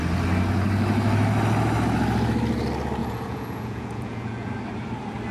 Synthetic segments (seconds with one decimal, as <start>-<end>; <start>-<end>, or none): 3.0-4.5